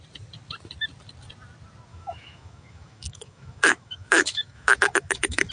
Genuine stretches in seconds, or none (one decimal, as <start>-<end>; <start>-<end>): 0.0-1.9